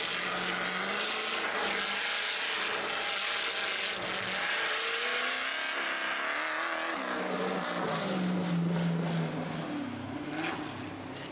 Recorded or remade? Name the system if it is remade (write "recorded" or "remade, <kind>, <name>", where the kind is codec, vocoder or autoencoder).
recorded